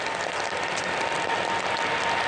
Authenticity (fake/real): real